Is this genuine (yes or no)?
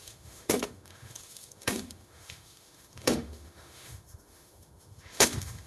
no